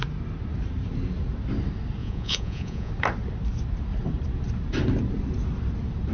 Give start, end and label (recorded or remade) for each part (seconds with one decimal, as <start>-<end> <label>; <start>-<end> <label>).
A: 0.0-2.0 recorded; 2.0-2.9 remade; 2.9-6.1 recorded

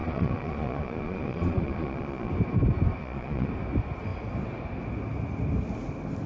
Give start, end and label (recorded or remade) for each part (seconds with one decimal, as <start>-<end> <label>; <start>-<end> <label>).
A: 0.0-2.3 remade; 2.3-3.0 recorded; 3.0-3.5 remade; 3.5-6.3 recorded